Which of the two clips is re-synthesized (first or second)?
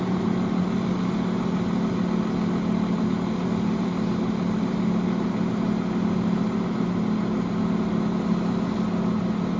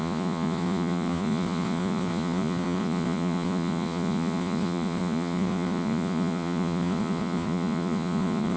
second